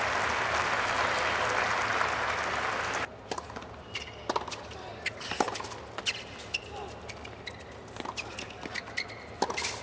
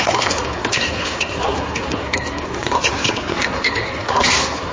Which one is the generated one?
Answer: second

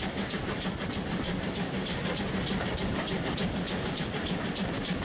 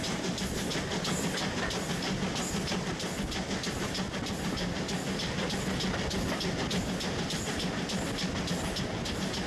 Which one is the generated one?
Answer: first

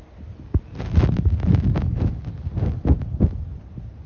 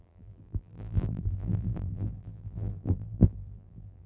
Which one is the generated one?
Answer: second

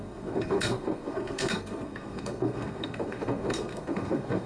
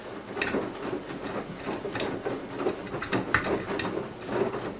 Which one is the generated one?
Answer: first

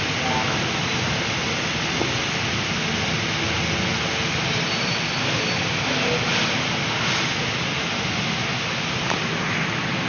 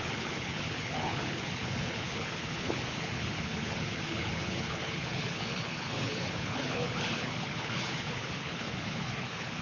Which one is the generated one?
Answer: second